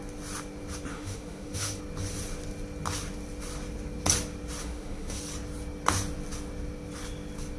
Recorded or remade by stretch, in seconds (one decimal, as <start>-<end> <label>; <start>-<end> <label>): 0.0-0.9 recorded; 0.9-1.8 remade; 1.8-4.6 recorded; 4.6-5.2 remade; 5.2-7.6 recorded